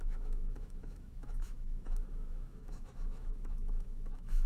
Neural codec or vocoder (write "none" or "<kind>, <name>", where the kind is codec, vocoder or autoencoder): autoencoder, DAC-VAE